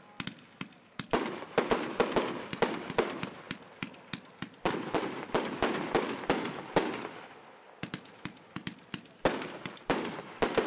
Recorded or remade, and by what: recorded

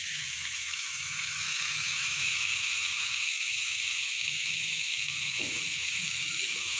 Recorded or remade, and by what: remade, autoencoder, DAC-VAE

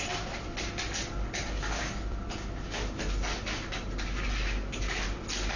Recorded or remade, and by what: recorded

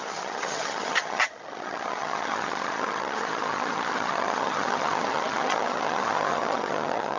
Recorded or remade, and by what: remade, vocoder, HiFi-GAN